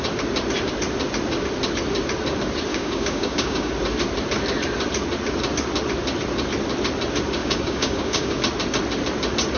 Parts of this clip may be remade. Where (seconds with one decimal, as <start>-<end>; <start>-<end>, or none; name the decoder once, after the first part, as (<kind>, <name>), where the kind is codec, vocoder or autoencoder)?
2.7-3.7 (codec, DAC); 7.4-8.4